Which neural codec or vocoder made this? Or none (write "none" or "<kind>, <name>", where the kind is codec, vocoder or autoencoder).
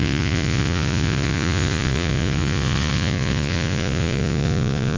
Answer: vocoder, Vocos